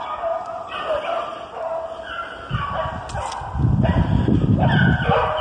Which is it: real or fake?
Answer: real